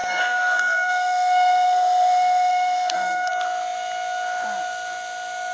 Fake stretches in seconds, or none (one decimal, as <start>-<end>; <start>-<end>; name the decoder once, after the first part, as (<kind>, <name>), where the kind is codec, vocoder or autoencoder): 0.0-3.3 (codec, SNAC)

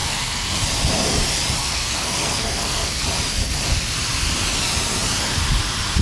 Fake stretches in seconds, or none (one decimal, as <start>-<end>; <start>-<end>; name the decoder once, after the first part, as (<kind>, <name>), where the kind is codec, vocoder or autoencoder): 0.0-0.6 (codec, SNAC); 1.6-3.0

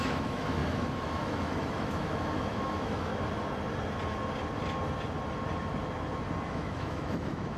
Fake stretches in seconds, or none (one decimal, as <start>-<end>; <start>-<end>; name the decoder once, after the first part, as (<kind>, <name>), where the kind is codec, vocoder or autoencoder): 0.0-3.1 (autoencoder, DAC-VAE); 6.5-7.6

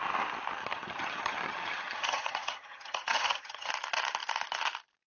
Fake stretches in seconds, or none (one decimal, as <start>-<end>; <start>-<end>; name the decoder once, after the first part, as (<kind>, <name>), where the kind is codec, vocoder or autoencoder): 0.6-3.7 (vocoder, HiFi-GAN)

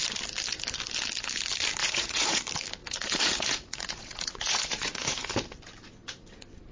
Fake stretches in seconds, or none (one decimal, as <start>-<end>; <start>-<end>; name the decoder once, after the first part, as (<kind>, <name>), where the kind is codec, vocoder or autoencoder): 1.8-2.4 (vocoder, Vocos); 2.8-5.2

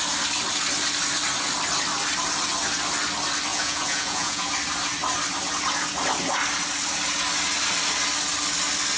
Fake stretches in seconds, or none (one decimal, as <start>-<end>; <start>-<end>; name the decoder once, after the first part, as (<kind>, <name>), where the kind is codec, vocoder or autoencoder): 3.5-4.5 (vocoder, Vocos)

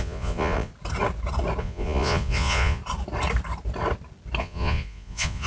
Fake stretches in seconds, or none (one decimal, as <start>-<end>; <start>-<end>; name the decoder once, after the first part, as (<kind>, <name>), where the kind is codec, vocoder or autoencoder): 0.0-0.7 (vocoder, Vocos); 1.6-2.8; 4.4-5.5

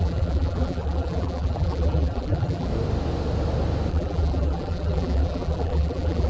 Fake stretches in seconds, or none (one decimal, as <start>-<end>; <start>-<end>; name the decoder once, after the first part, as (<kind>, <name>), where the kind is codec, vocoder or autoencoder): 0.0-2.7 (vocoder, BigVGAN v2); 3.9-6.3